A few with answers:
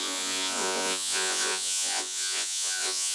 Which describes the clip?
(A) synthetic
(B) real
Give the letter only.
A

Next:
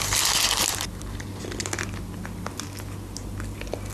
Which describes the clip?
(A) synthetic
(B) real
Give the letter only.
B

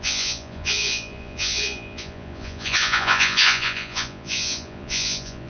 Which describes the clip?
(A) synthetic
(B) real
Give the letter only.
A